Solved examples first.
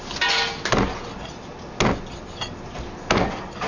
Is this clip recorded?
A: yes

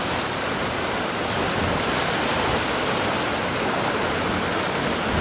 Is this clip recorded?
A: yes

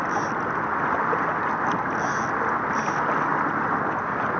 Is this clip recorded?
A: yes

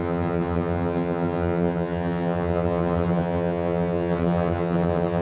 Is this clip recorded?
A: no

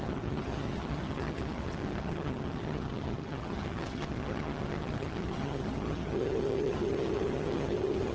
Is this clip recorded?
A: no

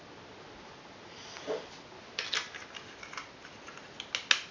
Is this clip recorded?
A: yes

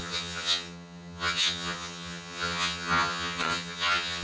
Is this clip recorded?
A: no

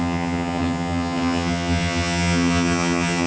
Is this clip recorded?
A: no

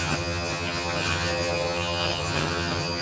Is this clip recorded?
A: no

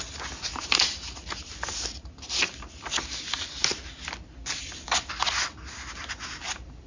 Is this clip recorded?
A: yes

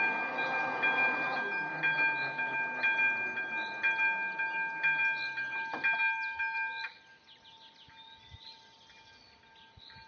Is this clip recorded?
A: yes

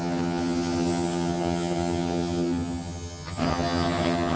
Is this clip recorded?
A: no